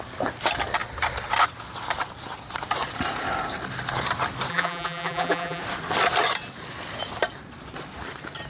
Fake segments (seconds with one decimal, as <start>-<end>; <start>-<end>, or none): 4.5-5.6